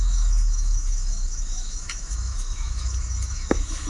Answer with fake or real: fake